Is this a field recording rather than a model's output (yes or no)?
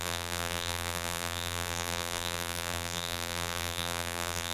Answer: no